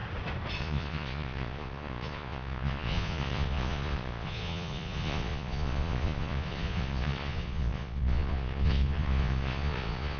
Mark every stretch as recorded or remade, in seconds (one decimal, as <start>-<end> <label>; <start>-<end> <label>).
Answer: 0.0-0.6 recorded; 0.6-10.2 remade